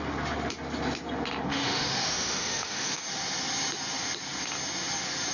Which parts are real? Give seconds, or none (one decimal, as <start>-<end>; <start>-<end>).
0.0-1.5; 3.0-5.3